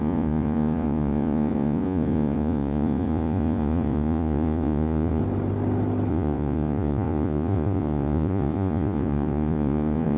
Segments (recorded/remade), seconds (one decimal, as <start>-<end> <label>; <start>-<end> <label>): 0.0-5.2 remade; 5.2-6.1 recorded; 6.1-10.2 remade